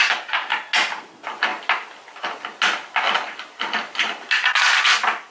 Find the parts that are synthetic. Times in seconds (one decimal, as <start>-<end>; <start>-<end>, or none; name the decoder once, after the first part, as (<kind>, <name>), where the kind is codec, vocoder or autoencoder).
none